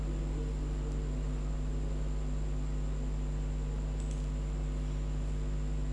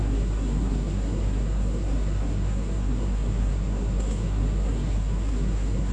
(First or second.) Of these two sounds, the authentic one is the first